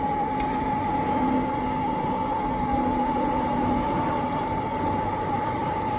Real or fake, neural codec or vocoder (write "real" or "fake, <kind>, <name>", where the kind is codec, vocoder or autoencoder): real